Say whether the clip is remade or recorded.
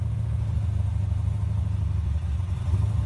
recorded